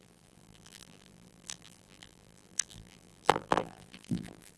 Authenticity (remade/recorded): remade